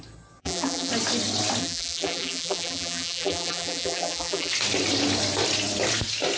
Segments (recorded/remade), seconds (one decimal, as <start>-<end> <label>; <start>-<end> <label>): 0.0-0.4 recorded; 0.4-0.9 remade; 0.9-1.6 recorded; 1.6-4.5 remade; 4.5-6.4 recorded